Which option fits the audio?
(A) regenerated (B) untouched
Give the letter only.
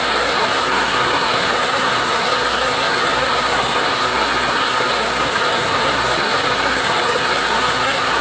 A